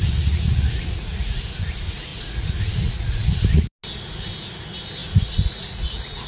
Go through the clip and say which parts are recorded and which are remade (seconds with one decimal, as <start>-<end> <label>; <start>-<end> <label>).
0.0-1.4 remade; 1.4-2.1 recorded; 2.1-3.7 remade; 3.7-5.0 recorded; 5.0-6.3 remade